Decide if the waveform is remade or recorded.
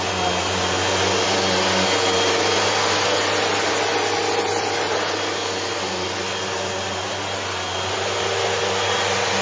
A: recorded